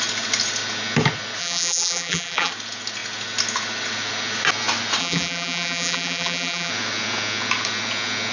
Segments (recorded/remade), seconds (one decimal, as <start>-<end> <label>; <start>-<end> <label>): 0.0-1.4 recorded; 1.4-2.5 remade; 2.5-5.0 recorded; 5.0-6.7 remade; 6.7-8.3 recorded